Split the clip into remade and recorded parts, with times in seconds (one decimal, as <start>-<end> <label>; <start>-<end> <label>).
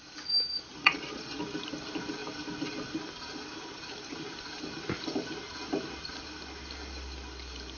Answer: 0.0-0.8 recorded; 0.8-1.4 remade; 1.4-7.8 recorded